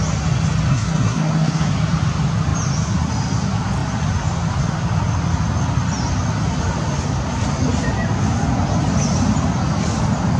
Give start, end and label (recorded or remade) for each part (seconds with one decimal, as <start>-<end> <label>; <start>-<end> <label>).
0.0-0.7 recorded; 0.7-1.7 remade; 1.7-10.4 recorded